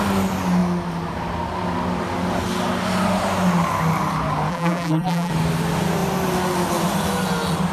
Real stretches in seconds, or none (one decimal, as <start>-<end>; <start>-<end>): 0.0-4.5; 5.3-7.7